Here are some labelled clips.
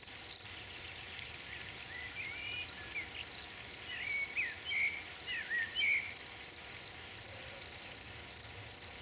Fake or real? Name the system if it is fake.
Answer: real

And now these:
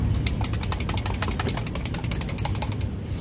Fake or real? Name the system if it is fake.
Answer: real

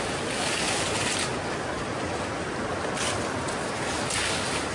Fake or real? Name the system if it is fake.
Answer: real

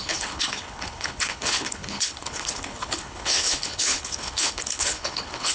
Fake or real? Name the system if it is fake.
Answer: fake, codec, HILCodec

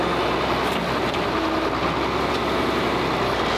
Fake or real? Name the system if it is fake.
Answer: real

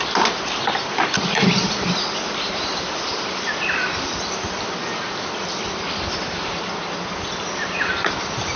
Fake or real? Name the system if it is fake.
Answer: real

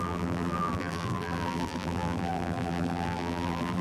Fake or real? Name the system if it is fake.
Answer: fake, vocoder, BigVGAN v2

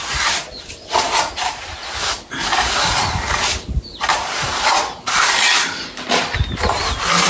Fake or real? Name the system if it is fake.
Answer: real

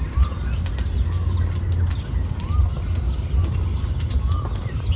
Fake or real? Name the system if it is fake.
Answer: real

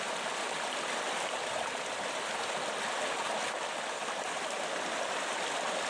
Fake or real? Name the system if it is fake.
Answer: real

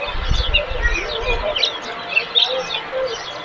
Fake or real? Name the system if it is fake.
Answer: real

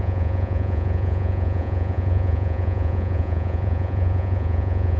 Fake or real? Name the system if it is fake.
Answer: fake, vocoder, Vocos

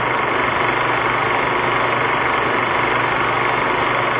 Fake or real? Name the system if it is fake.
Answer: real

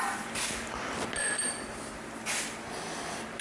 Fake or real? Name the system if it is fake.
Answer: real